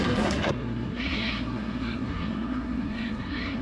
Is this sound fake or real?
fake